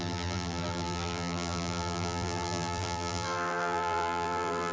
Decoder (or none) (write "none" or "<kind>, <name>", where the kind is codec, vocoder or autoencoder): vocoder, BigVGAN v2